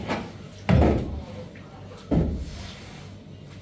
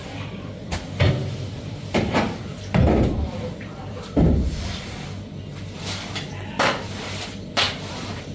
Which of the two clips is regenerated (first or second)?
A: second